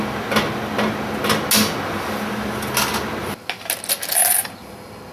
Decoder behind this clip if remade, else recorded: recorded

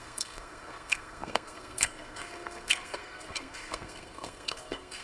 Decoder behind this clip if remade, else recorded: remade, codec, SNAC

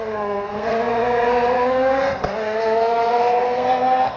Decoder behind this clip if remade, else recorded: remade, codec, SNAC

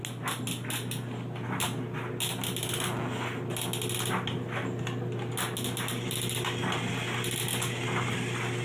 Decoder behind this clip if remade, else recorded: recorded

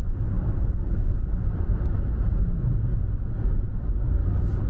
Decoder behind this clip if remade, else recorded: recorded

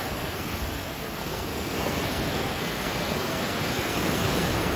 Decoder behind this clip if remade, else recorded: remade, codec, SNAC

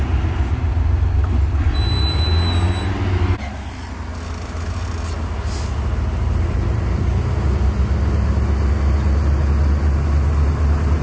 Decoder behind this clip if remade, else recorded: recorded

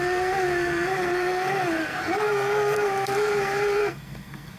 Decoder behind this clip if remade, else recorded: remade, codec, SNAC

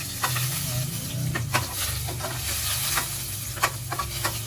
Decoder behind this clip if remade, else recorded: recorded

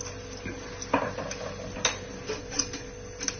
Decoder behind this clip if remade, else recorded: recorded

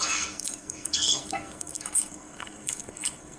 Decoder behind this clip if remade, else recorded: remade, codec, SNAC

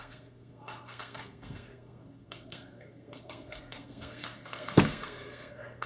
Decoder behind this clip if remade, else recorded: remade, codec, SNAC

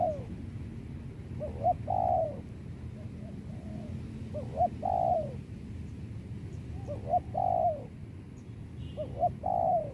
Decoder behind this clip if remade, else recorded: recorded